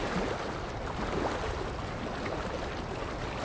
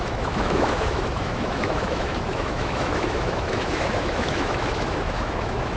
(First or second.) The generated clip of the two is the second